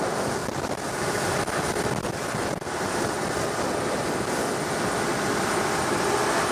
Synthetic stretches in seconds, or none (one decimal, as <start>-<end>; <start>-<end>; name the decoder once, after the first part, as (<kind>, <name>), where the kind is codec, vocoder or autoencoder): none